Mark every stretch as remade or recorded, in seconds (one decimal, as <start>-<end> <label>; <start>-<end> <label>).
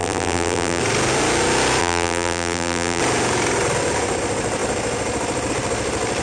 0.0-0.8 remade; 0.8-1.8 recorded; 1.8-3.0 remade; 3.0-6.2 recorded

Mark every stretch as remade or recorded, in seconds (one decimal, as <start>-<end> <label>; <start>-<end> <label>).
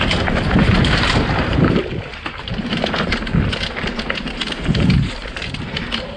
0.0-0.8 recorded; 0.8-3.1 remade; 3.1-5.2 recorded; 5.2-6.2 remade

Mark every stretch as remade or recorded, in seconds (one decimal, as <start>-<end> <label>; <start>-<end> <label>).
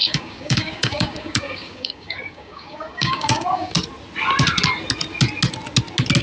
0.0-3.7 remade; 3.7-6.2 recorded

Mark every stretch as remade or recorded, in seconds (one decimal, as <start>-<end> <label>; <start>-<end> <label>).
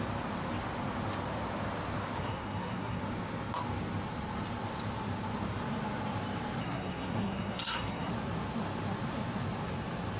0.0-2.2 recorded; 2.2-3.0 remade; 3.0-6.6 recorded; 6.6-8.1 remade; 8.1-10.2 recorded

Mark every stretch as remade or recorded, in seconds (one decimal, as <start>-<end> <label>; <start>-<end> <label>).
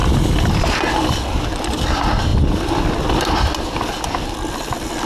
0.0-5.1 recorded